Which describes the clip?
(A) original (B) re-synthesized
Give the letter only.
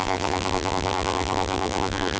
B